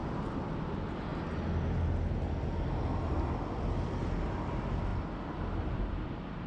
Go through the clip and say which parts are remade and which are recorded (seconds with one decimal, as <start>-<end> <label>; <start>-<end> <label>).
0.0-6.5 recorded